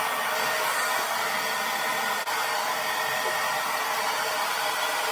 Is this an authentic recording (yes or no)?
yes